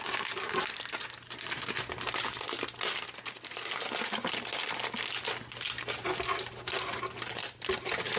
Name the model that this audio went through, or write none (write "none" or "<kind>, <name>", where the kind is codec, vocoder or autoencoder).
none